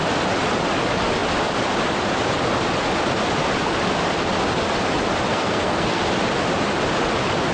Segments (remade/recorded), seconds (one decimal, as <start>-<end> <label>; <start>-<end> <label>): 0.0-5.3 recorded; 5.3-6.0 remade; 6.0-7.5 recorded

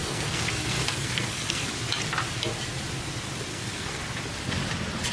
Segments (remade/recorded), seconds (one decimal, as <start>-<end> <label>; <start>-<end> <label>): 0.0-1.7 remade; 1.7-3.5 recorded; 3.5-4.0 remade; 4.0-5.1 recorded

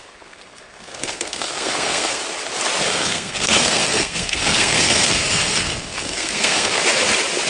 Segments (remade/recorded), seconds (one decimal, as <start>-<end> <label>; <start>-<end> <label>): 0.0-2.2 remade; 2.2-2.8 recorded; 2.8-6.8 remade; 6.8-7.5 recorded

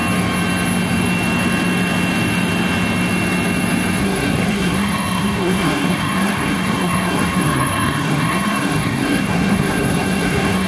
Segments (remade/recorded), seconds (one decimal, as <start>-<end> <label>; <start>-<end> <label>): 0.0-4.0 recorded; 4.0-10.7 remade

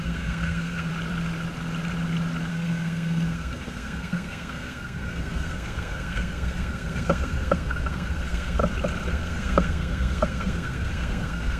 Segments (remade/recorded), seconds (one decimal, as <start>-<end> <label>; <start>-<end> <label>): 0.0-0.9 remade; 0.9-2.5 recorded; 2.5-8.6 remade; 8.6-9.1 recorded; 9.1-11.6 remade